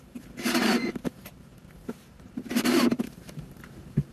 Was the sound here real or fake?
fake